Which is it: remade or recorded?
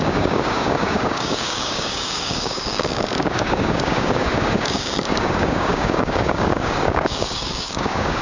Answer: remade